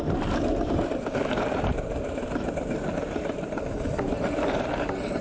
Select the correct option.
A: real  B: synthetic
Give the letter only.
B